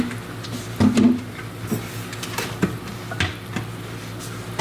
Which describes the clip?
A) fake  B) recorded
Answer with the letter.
B